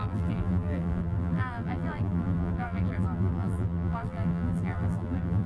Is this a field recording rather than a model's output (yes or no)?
no